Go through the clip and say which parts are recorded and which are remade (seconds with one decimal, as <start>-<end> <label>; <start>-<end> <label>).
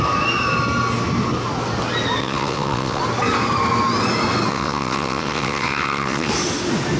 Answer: 0.0-2.2 recorded; 2.2-3.0 remade; 3.0-4.5 recorded; 4.5-6.3 remade; 6.3-7.0 recorded